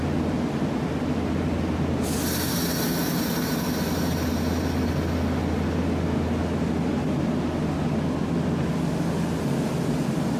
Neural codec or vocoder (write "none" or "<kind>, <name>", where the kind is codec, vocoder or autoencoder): none